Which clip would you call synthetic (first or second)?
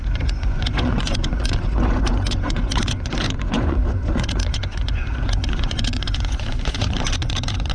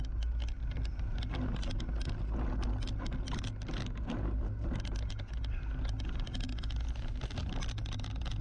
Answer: first